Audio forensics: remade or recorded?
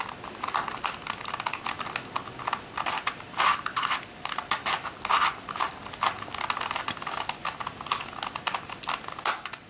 recorded